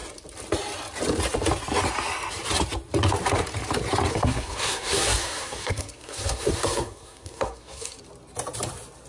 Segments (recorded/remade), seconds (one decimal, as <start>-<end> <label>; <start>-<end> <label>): 0.0-4.1 recorded; 4.1-8.0 remade; 8.0-9.1 recorded